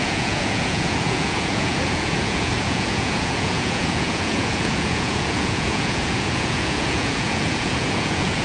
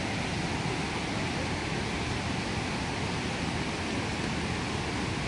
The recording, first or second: second